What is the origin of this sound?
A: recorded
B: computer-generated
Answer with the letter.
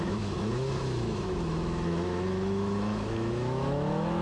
B